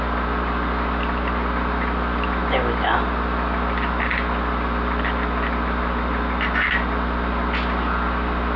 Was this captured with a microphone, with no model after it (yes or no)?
yes